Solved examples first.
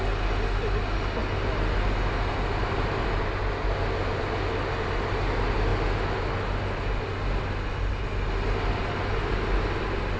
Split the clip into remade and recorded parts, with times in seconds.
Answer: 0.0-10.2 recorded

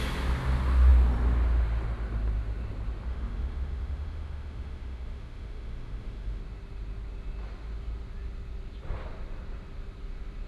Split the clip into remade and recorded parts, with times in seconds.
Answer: 0.0-3.1 recorded; 3.1-6.4 remade; 6.4-10.5 recorded